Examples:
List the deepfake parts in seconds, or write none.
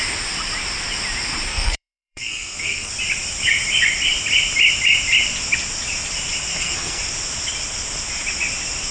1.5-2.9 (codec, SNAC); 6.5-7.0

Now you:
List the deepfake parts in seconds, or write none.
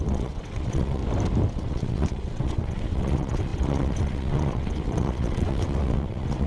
0.0-1.0 (vocoder, WaveNeXt); 1.5-6.5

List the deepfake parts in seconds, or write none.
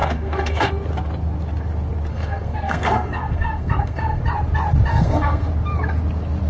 0.0-0.7 (codec, SNAC); 2.1-4.2; 4.9-5.5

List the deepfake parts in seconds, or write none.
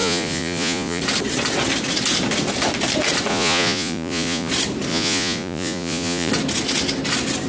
0.0-1.0 (vocoder, Vocos); 3.3-4.5; 4.9-6.3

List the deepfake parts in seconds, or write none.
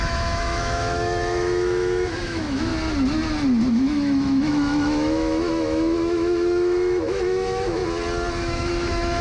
0.0-2.7 (autoencoder, DAC-VAE); 3.7-7.8; 8.4-9.2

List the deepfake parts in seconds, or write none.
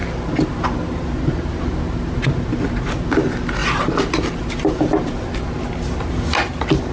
none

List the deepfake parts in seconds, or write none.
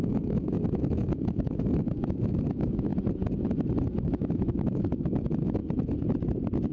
0.0-2.9 (autoencoder, DAC-VAE); 3.9-5.6